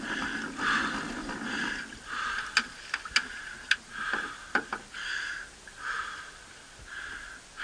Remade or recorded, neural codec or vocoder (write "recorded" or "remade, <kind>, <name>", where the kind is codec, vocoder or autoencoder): recorded